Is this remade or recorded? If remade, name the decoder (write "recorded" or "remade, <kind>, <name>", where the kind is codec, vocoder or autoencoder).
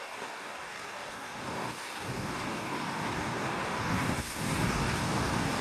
remade, codec, DAC